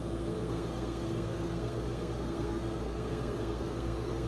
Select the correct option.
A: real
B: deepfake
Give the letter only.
B